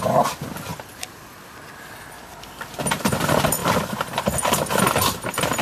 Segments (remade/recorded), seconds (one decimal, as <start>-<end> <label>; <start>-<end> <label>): 0.0-0.7 recorded; 0.7-1.5 remade; 1.5-5.6 recorded